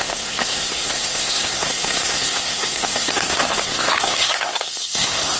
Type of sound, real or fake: fake